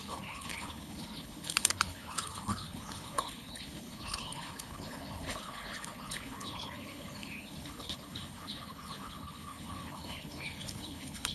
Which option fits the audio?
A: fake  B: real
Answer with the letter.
A